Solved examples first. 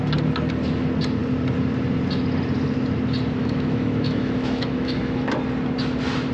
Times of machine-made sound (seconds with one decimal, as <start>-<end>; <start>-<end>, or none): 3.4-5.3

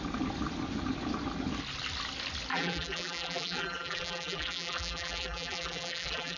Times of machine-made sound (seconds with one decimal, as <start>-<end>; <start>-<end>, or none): 2.5-6.4

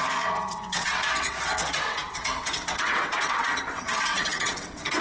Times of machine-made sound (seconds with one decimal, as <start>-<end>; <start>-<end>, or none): 0.0-5.0